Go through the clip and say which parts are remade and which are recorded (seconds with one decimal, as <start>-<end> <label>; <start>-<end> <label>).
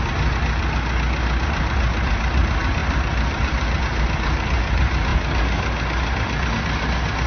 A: 0.0-2.8 recorded; 2.8-3.8 remade; 3.8-7.3 recorded